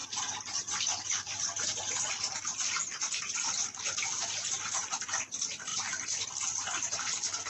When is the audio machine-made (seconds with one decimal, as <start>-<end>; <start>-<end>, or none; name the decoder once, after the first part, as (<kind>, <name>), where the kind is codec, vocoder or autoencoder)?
0.0-2.0 (vocoder, BigVGAN v2); 5.7-6.3